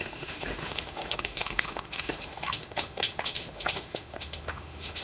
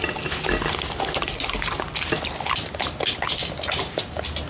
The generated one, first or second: first